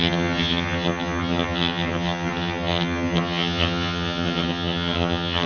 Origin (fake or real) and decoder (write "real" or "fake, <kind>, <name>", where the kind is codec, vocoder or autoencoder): fake, vocoder, HiFi-GAN